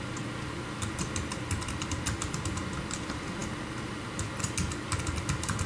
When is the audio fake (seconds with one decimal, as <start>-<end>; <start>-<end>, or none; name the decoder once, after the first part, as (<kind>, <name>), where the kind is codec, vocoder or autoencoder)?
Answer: none